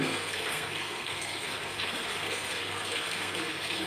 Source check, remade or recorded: remade